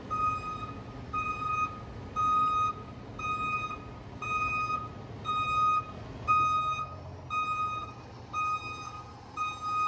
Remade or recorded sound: recorded